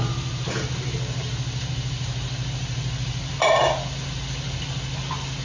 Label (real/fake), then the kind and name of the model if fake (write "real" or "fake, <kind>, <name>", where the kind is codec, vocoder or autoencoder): real